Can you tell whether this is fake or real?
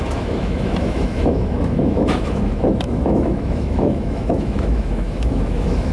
fake